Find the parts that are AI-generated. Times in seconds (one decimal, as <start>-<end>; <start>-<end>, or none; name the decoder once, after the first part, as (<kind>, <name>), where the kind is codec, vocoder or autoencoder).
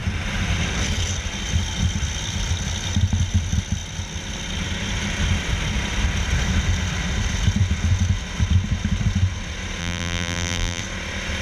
9.8-10.8 (vocoder, BigVGAN v2)